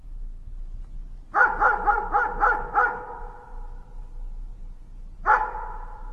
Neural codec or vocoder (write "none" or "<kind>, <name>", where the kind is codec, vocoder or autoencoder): none